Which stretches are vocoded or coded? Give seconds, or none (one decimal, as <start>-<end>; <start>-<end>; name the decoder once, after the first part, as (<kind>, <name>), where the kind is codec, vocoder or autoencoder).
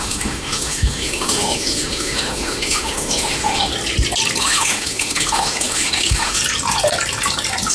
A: 0.0-3.7 (autoencoder, DAC-VAE); 4.4-6.4